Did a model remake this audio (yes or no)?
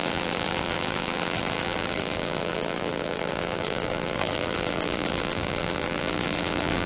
yes